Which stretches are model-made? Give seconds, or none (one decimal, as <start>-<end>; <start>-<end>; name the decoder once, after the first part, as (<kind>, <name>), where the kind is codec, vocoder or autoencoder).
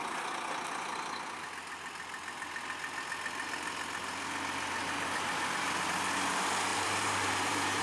6.7-7.8 (vocoder, BigVGAN v2)